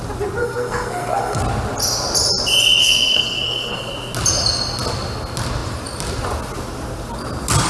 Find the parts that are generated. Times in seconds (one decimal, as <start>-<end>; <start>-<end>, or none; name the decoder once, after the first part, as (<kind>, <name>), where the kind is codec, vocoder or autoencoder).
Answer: 0.4-1.4 (codec, SNAC); 2.8-3.9